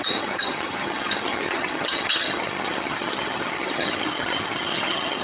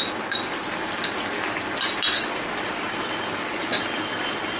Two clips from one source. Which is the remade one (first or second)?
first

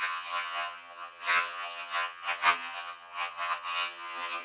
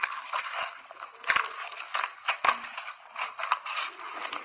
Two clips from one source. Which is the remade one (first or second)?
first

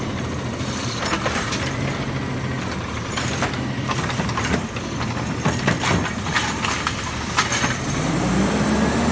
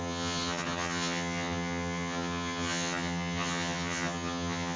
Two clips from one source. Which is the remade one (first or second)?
second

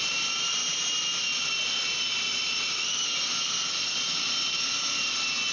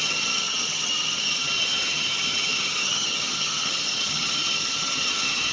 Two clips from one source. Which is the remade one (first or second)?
second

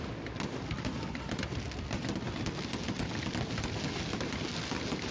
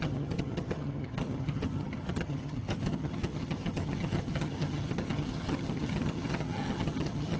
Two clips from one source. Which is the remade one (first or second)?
second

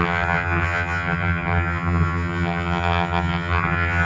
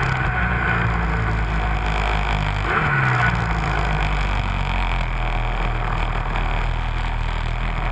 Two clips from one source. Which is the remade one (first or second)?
first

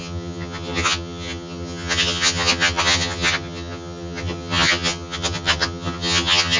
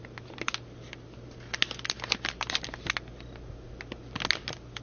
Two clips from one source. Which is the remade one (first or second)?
first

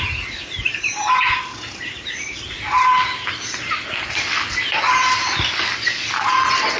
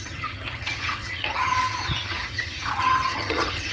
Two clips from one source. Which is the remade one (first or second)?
second